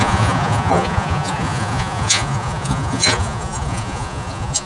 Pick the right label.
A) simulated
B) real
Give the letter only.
A